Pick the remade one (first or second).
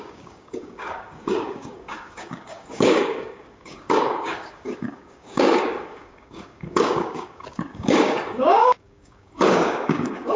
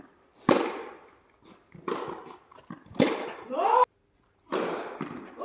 first